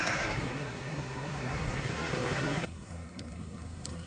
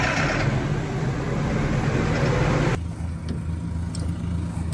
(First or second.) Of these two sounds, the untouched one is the second